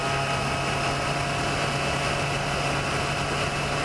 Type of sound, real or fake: real